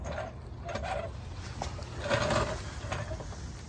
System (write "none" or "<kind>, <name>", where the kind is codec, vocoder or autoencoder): none